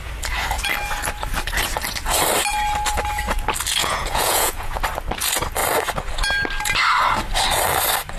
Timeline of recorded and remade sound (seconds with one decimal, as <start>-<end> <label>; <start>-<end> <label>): 0.0-3.8 recorded; 3.8-4.8 remade; 4.8-8.2 recorded